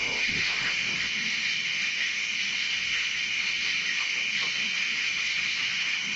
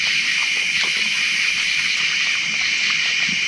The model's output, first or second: first